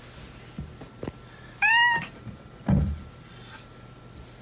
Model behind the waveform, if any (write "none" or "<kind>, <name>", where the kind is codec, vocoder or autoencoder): none